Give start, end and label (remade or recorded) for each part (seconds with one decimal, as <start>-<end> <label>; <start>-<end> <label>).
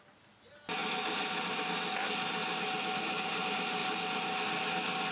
0.0-5.1 recorded